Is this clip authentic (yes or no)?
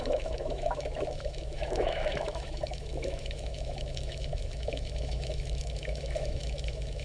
no